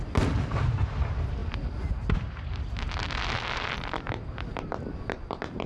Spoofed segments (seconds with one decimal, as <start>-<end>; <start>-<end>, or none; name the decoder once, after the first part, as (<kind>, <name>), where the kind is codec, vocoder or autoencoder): none